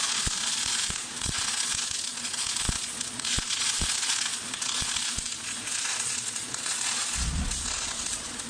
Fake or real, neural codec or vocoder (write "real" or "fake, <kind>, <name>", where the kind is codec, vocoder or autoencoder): fake, vocoder, Vocos